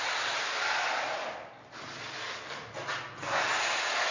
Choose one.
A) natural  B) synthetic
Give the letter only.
A